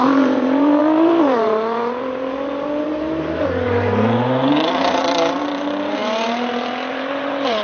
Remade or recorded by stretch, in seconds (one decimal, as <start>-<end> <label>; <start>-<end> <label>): 0.0-6.0 remade; 6.0-6.9 recorded; 6.9-7.6 remade

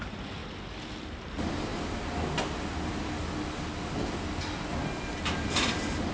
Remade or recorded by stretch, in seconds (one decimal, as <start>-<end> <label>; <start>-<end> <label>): 0.0-0.4 remade; 0.4-1.0 recorded; 1.0-1.7 remade; 1.7-5.4 recorded; 5.4-6.1 remade

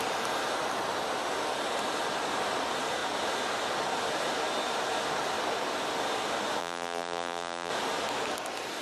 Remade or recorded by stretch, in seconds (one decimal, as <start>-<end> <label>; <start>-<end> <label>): 0.0-6.6 recorded; 6.6-7.7 remade; 7.7-8.8 recorded

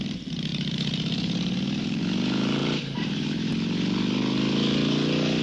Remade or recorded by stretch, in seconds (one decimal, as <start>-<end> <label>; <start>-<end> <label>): 0.0-0.5 recorded; 0.5-2.0 remade; 2.0-2.6 recorded; 2.6-3.5 remade; 3.5-5.4 recorded

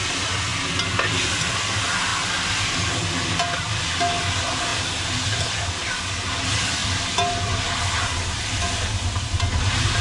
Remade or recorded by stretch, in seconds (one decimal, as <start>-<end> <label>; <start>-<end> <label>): 0.0-4.7 recorded; 4.7-5.5 remade; 5.5-6.8 recorded; 6.8-7.7 remade; 7.7-10.0 recorded

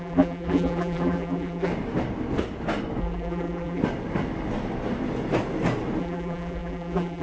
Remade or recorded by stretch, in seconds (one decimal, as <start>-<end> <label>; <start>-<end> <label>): 0.0-1.7 remade; 1.7-3.0 recorded; 3.0-3.8 remade; 3.8-6.0 recorded; 6.0-7.2 remade